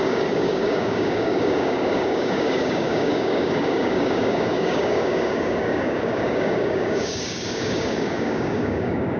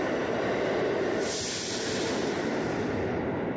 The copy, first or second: first